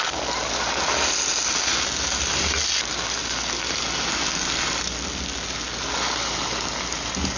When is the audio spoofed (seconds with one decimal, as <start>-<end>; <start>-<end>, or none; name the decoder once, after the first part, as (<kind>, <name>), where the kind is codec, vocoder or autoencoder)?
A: none